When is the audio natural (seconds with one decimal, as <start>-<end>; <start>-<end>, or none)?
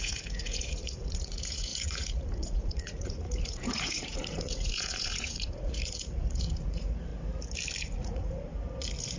7.1-7.8; 8.5-9.2